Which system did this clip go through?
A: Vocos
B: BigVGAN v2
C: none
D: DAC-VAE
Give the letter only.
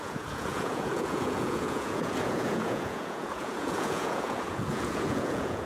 A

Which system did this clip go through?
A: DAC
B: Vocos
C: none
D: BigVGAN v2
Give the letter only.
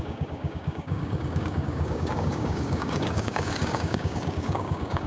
A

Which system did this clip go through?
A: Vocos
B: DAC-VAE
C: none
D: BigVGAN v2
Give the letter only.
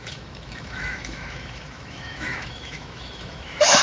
B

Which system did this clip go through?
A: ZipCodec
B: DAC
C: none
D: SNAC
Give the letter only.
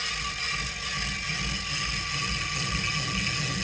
C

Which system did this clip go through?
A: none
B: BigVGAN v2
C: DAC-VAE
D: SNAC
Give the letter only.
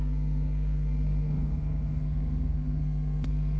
D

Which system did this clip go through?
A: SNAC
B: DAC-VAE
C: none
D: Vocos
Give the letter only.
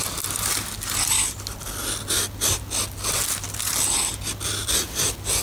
C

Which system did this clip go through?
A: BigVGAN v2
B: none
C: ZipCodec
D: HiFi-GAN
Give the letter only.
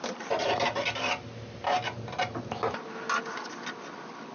B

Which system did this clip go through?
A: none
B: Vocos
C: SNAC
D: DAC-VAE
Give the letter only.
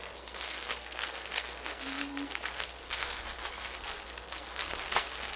C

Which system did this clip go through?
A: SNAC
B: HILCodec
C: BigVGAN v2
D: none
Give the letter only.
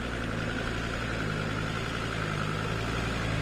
D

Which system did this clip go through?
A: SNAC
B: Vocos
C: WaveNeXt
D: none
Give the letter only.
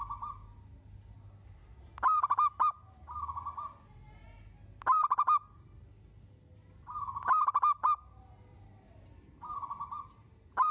D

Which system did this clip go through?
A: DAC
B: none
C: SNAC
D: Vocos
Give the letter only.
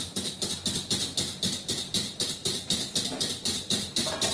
B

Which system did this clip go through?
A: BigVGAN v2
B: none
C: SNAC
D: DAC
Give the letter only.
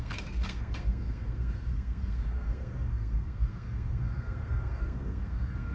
C